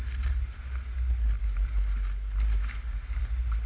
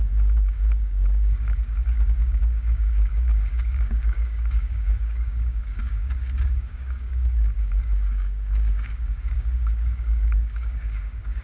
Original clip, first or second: first